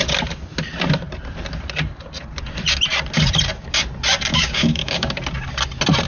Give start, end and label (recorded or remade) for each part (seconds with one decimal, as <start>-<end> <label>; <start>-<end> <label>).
0.0-4.3 recorded; 4.3-5.2 remade; 5.2-6.1 recorded